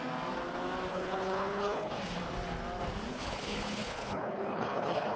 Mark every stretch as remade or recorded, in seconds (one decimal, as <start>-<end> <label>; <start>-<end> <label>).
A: 0.0-0.9 recorded; 0.9-1.9 remade; 1.9-3.1 recorded; 3.1-5.2 remade